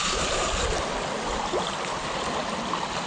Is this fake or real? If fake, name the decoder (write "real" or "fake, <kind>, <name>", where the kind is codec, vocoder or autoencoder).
real